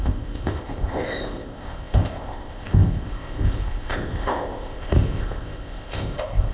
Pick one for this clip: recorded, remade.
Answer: remade